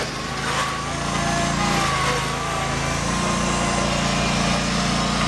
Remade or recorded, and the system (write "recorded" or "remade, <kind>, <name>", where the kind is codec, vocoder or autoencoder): recorded